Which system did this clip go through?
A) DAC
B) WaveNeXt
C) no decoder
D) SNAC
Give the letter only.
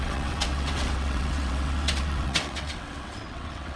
B